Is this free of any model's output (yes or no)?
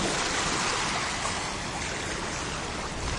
yes